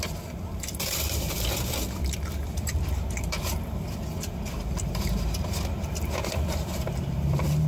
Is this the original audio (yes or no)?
no